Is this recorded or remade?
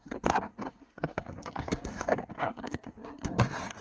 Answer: remade